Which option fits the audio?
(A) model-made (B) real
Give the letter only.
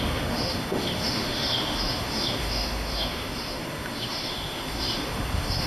A